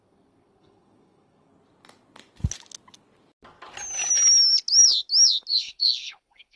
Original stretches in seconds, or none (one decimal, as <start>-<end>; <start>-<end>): 1.5-5.5